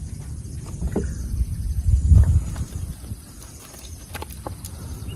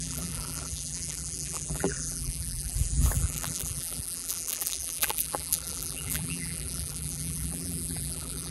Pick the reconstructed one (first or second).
second